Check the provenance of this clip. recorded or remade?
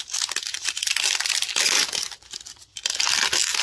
recorded